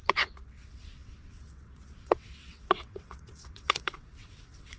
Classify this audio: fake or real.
fake